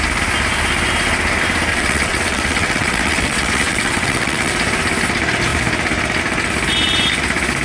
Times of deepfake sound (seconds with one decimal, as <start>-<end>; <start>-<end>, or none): 1.7-4.5